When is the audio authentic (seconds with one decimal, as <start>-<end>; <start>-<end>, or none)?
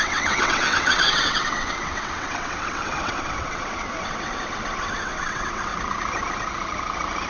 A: 5.7-7.3